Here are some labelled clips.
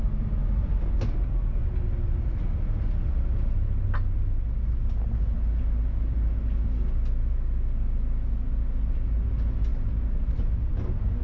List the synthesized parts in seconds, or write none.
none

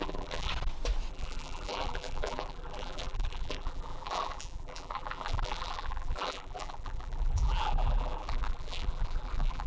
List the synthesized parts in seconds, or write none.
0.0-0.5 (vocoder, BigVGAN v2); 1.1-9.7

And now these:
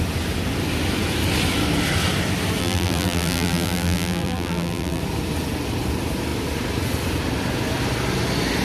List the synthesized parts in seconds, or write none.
2.6-5.0 (vocoder, BigVGAN v2)

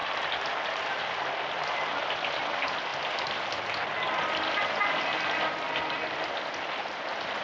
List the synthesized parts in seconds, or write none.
0.0-2.5 (vocoder, BigVGAN v2)